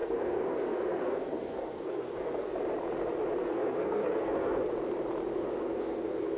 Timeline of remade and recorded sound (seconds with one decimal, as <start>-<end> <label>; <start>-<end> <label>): 0.0-2.5 remade; 2.5-3.4 recorded; 3.4-4.7 remade; 4.7-5.4 recorded; 5.4-6.4 remade